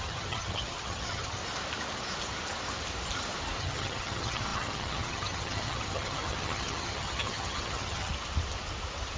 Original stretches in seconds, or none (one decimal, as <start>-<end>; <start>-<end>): 1.4-3.6; 8.1-9.2